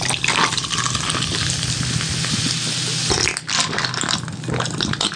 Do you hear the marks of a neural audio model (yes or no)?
no